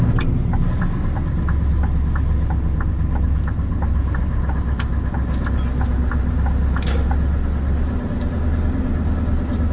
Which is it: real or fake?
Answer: real